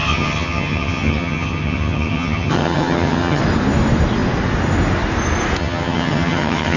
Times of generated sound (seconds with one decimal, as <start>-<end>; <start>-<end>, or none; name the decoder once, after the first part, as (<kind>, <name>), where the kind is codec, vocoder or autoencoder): 0.0-3.4 (vocoder, HiFi-GAN); 5.6-6.8